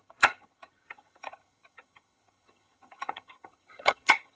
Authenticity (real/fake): fake